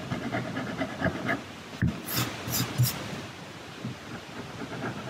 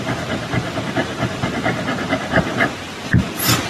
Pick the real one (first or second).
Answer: first